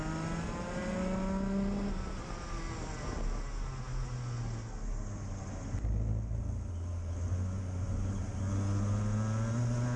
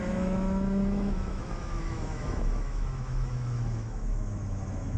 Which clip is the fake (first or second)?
second